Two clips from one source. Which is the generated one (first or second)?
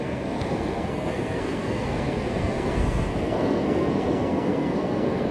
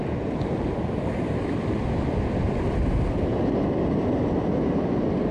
first